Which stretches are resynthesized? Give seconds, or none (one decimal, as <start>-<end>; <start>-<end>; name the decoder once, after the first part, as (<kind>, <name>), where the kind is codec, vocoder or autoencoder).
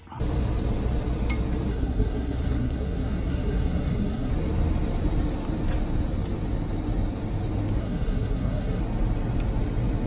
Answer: 1.7-4.3 (codec, SNAC); 7.8-8.8